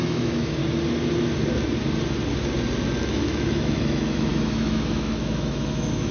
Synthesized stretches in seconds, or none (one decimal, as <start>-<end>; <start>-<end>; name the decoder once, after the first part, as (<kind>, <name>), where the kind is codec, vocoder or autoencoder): 0.0-0.6 (autoencoder, DAC-VAE); 3.0-6.1